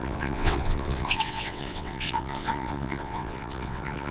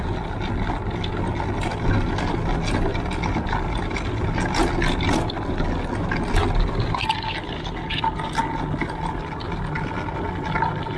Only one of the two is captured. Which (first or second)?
second